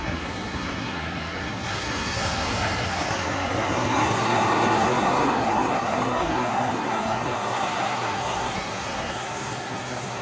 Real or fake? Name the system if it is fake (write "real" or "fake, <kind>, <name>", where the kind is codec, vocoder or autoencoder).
fake, codec, SNAC